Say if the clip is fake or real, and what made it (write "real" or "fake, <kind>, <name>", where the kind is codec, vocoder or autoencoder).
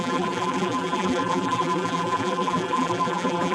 fake, vocoder, BigVGAN v2